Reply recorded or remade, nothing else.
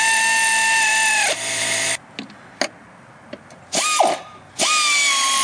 recorded